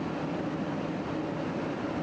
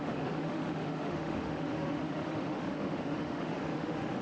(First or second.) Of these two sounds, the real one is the first